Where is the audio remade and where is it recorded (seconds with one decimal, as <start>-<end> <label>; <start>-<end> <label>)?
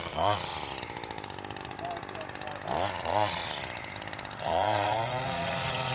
0.0-0.5 remade; 0.5-3.0 recorded; 3.0-3.4 remade; 3.4-4.4 recorded; 4.4-5.9 remade